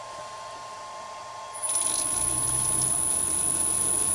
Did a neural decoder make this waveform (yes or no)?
no